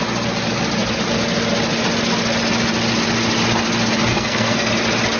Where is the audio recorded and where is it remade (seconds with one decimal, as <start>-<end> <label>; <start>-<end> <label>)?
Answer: 0.0-4.1 recorded; 4.1-4.7 remade; 4.7-5.2 recorded